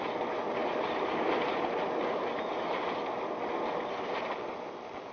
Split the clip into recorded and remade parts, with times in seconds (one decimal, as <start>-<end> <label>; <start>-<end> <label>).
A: 0.0-0.6 recorded; 0.6-2.6 remade; 2.6-5.1 recorded